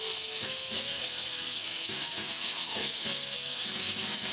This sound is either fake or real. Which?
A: fake